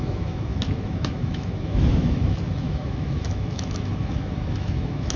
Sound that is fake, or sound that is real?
fake